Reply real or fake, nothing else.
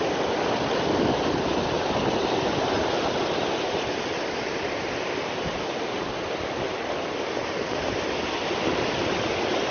real